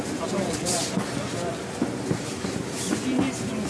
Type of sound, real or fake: real